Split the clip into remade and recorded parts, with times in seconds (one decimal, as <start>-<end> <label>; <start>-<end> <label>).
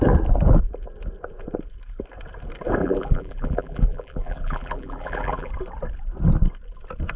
0.0-2.8 recorded; 2.8-5.5 remade; 5.5-7.2 recorded